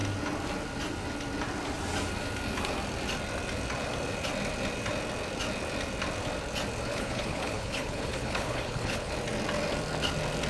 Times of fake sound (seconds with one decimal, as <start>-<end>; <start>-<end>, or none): 6.9-9.1